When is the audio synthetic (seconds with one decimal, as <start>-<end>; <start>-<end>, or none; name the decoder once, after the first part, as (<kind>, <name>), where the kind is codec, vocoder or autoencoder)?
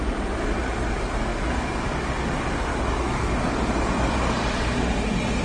1.3-2.3 (codec, DAC); 2.7-3.4